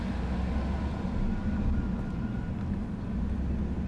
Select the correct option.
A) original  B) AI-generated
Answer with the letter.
A